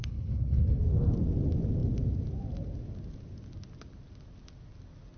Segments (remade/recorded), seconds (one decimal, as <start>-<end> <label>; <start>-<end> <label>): 0.0-0.8 remade; 0.8-5.2 recorded